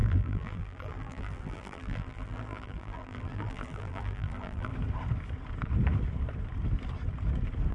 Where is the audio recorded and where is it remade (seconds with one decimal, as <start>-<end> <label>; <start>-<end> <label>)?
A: 0.0-4.7 remade; 4.7-7.7 recorded

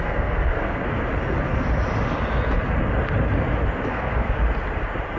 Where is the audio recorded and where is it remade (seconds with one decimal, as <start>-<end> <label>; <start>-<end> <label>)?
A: 0.0-0.8 remade; 0.8-3.9 recorded; 3.9-4.4 remade; 4.4-5.2 recorded

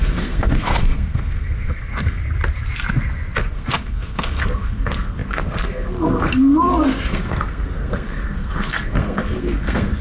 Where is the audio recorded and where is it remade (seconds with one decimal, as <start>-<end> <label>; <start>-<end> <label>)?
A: 0.0-2.2 remade; 2.2-3.5 recorded; 3.5-10.0 remade

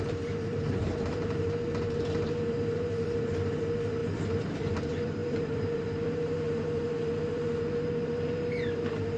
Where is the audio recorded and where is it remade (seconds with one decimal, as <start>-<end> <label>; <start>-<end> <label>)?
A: 0.0-9.2 remade

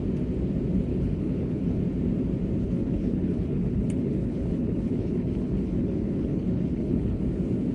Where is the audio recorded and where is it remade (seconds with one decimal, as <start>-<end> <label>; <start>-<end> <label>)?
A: 0.0-0.9 recorded; 0.9-1.8 remade; 1.8-2.6 recorded; 2.6-7.2 remade; 7.2-7.7 recorded

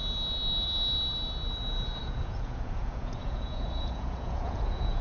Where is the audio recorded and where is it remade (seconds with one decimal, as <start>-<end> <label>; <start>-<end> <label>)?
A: 0.0-2.0 recorded; 2.0-5.0 remade

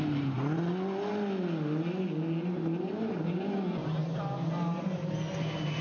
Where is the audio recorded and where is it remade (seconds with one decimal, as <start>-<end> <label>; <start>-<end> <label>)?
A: 0.0-5.8 recorded

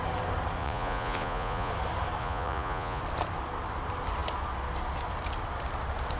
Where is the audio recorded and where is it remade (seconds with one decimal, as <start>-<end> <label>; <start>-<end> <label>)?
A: 0.0-0.6 recorded; 0.6-1.7 remade; 1.7-2.2 recorded; 2.2-3.0 remade; 3.0-6.2 recorded